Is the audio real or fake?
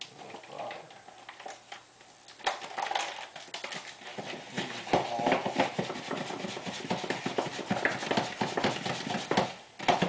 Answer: real